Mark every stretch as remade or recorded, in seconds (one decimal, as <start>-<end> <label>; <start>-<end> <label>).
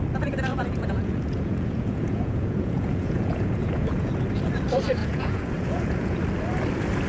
0.0-0.5 recorded; 0.5-4.1 remade; 4.1-5.0 recorded; 5.0-6.2 remade; 6.2-7.1 recorded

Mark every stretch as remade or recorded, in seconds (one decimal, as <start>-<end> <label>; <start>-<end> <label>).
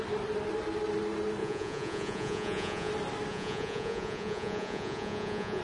0.0-1.4 recorded; 1.4-2.9 remade; 2.9-3.3 recorded; 3.3-5.6 remade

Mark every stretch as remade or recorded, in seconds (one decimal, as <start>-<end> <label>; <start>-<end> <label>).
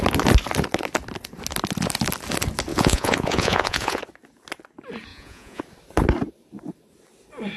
0.0-2.7 recorded; 2.7-4.0 remade; 4.0-5.1 recorded; 5.1-5.6 remade; 5.6-7.6 recorded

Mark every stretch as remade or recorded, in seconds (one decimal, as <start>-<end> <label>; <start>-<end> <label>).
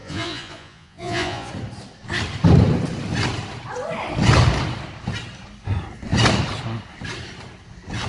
0.0-1.5 remade; 1.5-8.1 recorded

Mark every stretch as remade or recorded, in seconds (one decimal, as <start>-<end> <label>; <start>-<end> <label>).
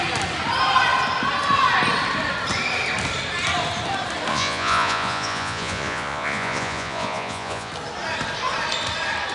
0.0-4.3 recorded; 4.3-7.7 remade; 7.7-9.3 recorded